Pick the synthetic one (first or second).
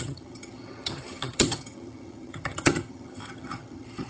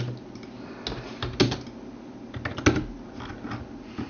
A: first